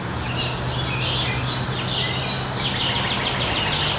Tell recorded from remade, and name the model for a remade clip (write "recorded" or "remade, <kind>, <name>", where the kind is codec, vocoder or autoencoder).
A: recorded